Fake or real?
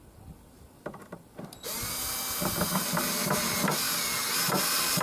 real